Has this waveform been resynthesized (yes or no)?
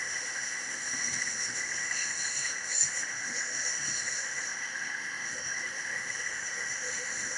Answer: yes